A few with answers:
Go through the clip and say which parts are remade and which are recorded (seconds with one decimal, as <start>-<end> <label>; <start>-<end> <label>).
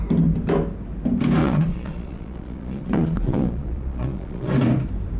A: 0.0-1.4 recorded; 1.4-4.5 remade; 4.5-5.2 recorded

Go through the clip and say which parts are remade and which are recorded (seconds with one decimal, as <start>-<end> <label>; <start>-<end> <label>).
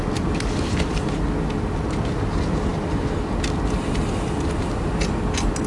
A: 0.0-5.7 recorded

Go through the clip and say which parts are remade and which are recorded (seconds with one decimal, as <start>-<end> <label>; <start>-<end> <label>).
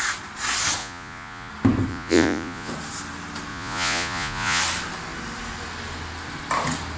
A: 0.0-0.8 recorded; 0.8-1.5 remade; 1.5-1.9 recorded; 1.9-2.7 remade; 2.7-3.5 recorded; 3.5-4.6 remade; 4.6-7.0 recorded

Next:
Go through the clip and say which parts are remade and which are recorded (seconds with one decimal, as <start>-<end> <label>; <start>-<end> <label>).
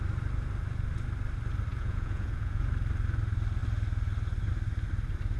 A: 0.0-1.7 recorded; 1.7-2.7 remade; 2.7-5.4 recorded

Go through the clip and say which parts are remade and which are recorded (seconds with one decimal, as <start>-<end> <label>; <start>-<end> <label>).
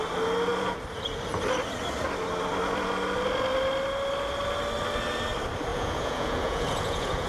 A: 0.0-5.7 recorded; 5.7-7.3 remade